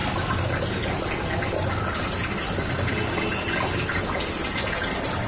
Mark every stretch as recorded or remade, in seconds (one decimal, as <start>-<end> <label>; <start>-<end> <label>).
0.0-5.3 recorded